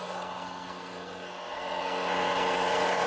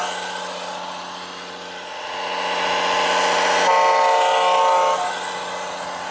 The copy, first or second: first